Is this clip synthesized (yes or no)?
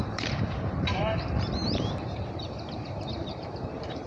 yes